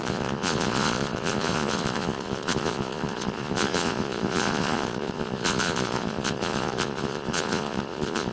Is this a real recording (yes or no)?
no